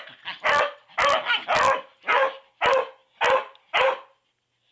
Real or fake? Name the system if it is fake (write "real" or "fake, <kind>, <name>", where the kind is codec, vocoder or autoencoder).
real